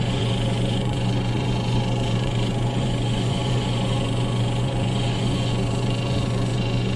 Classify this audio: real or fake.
fake